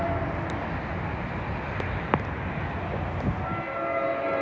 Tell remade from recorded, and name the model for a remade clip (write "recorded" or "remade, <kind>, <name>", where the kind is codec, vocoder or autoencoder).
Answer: recorded